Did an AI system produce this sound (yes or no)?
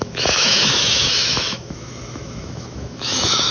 yes